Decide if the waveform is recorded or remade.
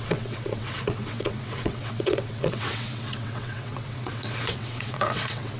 remade